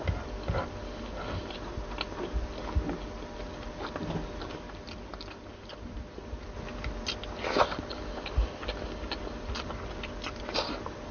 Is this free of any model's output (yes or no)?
yes